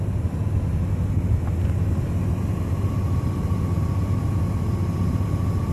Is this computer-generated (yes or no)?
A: no